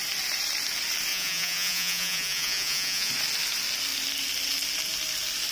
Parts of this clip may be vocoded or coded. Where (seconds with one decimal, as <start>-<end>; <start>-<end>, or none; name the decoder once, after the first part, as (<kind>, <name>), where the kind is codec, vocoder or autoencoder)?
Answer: 1.1-3.1 (vocoder, Vocos)

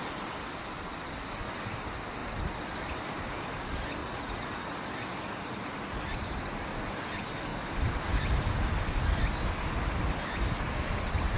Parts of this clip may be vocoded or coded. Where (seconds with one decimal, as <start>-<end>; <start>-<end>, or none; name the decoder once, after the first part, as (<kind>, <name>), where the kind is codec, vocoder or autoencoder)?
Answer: 4.0-4.6 (vocoder, Vocos)